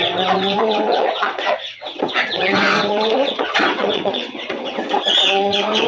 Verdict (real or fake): fake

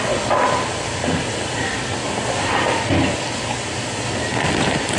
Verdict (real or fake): real